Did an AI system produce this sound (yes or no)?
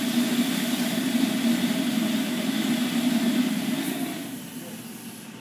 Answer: no